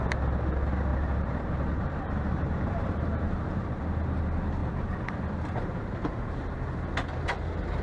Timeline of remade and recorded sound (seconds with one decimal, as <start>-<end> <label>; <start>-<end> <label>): 0.0-0.9 recorded; 0.9-3.8 remade; 3.8-4.6 recorded; 4.6-6.5 remade; 6.5-7.8 recorded